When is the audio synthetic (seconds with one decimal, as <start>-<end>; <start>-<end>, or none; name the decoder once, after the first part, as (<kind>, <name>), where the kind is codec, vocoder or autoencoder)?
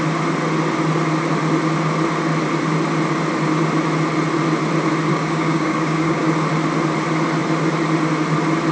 5.1-6.2 (codec, DAC)